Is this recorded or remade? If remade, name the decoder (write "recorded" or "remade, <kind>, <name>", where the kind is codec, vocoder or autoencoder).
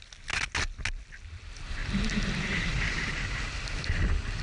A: recorded